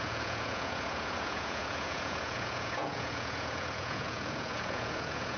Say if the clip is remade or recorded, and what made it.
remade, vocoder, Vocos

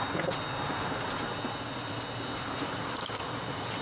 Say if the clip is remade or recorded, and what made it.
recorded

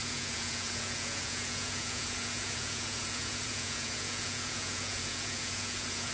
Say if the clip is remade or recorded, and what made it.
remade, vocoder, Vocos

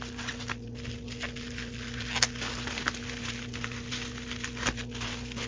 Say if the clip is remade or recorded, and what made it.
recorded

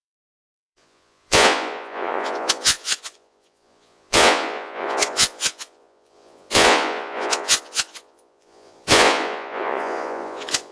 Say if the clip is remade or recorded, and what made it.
remade, vocoder, Vocos